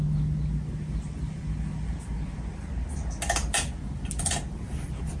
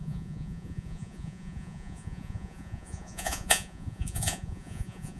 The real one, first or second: first